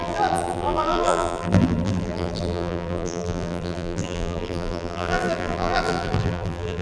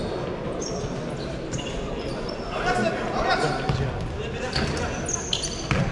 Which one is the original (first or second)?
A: second